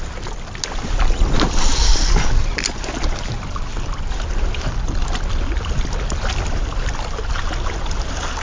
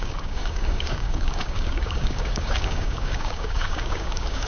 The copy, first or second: second